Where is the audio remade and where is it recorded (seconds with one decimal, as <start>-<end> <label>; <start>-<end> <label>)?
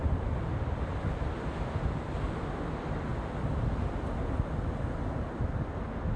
0.0-6.2 recorded